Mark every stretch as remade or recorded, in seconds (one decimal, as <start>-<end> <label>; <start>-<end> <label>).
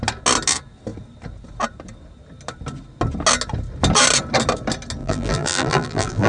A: 0.0-5.0 recorded; 5.0-6.3 remade